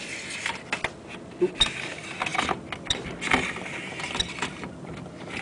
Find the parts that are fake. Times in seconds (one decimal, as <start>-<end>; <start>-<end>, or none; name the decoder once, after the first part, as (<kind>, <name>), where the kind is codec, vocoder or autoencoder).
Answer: none